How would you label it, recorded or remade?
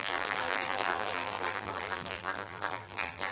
remade